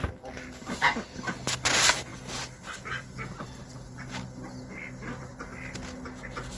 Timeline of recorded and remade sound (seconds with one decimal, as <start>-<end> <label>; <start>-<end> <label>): 0.0-6.6 recorded